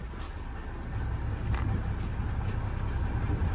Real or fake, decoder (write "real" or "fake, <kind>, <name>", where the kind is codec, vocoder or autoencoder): real